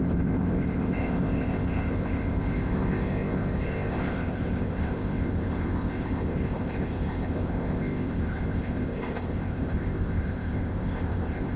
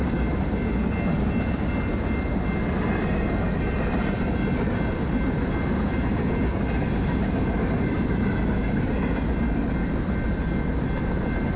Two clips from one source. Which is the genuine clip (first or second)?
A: second